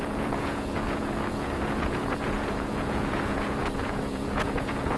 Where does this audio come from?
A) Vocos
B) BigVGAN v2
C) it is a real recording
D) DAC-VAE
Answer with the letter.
A